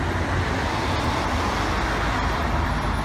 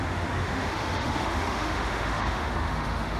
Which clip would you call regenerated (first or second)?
second